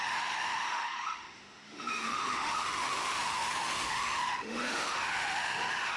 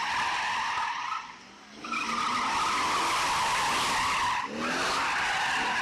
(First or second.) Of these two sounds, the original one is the second